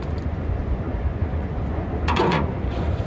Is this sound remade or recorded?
remade